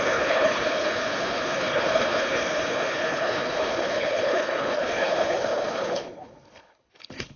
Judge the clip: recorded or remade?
remade